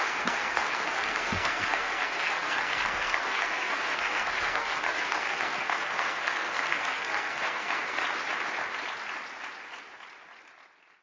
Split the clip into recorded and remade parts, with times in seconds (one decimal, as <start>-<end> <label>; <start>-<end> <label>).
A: 0.0-8.0 remade; 8.0-11.0 recorded